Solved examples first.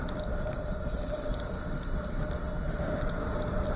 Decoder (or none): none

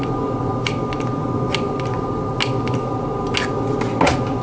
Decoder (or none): none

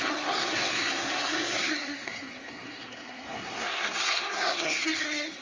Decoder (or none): codec, SNAC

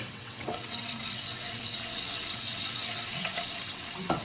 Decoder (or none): vocoder, WaveNeXt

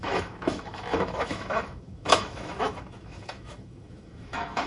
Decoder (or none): autoencoder, DAC-VAE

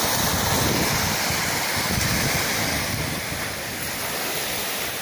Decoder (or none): none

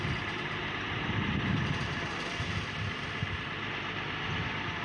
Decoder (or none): vocoder, BigVGAN v2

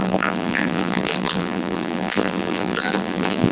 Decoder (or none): vocoder, BigVGAN v2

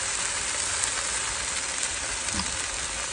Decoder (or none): none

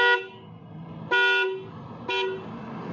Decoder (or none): none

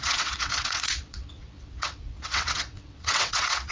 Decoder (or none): vocoder, WaveNeXt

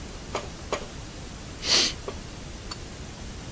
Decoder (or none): none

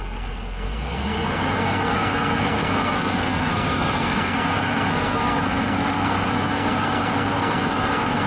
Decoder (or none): codec, SNAC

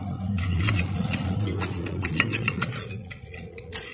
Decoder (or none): vocoder, Vocos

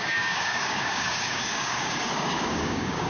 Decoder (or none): codec, DAC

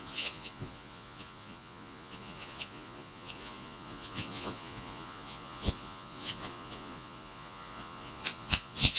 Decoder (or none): vocoder, Vocos